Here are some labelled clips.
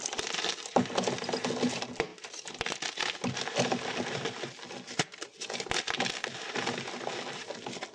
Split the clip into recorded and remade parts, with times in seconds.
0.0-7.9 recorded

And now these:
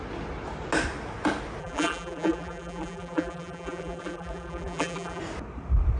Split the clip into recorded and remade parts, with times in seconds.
0.0-1.6 recorded; 1.6-5.2 remade; 5.2-6.0 recorded

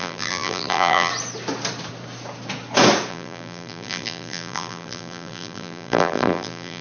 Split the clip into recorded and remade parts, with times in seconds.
0.0-1.1 remade; 1.1-3.1 recorded; 3.1-6.8 remade

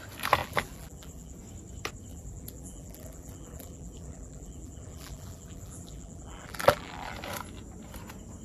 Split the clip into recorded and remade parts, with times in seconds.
0.0-0.4 recorded; 0.4-1.4 remade; 1.4-2.1 recorded; 2.1-7.1 remade; 7.1-8.4 recorded